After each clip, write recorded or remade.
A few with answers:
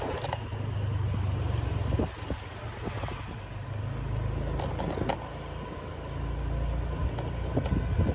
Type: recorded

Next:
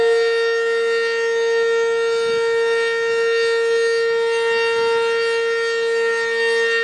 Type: recorded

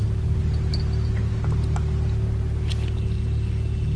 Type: recorded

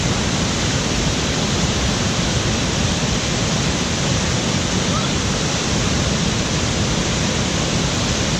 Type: remade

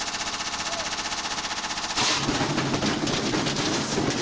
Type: recorded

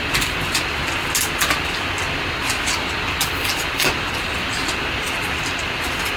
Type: recorded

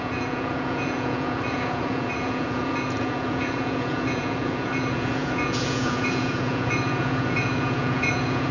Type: remade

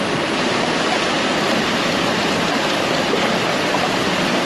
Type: recorded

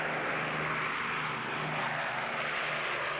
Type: recorded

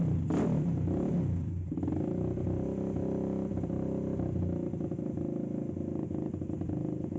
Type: recorded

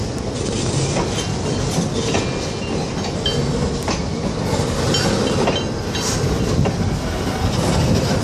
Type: recorded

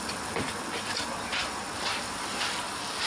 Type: recorded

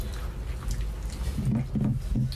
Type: recorded